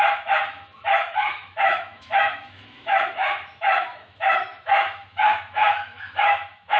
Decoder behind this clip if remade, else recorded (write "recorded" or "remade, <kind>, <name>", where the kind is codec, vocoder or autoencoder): remade, autoencoder, DAC-VAE